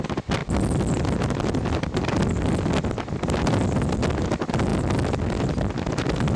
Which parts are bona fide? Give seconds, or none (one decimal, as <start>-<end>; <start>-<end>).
0.0-6.4